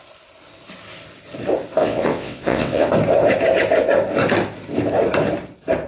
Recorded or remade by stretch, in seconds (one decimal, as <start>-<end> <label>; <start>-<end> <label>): 0.0-1.8 recorded; 1.8-2.9 remade; 2.9-5.9 recorded